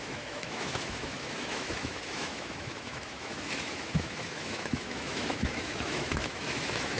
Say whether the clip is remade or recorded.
remade